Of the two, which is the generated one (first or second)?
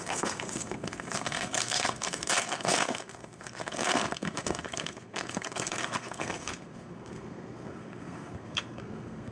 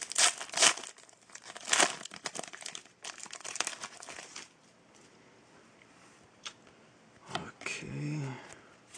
first